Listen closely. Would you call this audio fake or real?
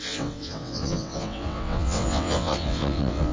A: fake